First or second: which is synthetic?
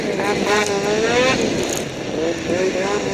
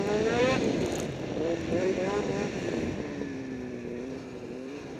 second